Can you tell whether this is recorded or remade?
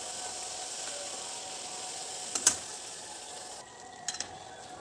recorded